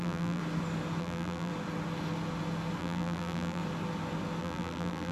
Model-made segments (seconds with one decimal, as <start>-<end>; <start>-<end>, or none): 0.0-0.4; 1.0-1.5; 2.8-3.6; 4.4-5.1